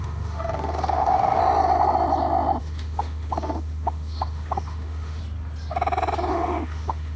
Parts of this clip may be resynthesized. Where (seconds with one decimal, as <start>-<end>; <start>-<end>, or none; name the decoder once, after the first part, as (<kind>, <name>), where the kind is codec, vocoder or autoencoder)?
0.0-1.4 (autoencoder, DAC-VAE); 2.6-5.2; 6.3-7.2